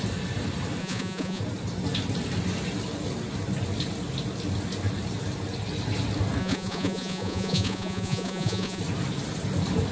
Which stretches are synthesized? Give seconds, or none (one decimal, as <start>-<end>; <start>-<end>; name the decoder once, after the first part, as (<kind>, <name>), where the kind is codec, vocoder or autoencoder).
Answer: 0.8-1.4 (vocoder, Vocos); 6.4-8.8